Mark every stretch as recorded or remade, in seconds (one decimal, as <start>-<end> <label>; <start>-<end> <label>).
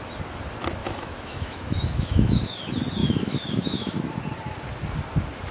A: 0.0-0.8 recorded; 0.8-2.6 remade; 2.6-3.0 recorded; 3.0-4.0 remade; 4.0-5.5 recorded